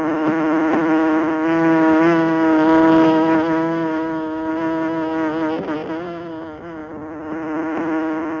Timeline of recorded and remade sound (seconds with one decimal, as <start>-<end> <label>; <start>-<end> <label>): 0.0-4.5 remade; 4.5-6.3 recorded; 6.3-6.8 remade; 6.8-7.6 recorded; 7.6-8.4 remade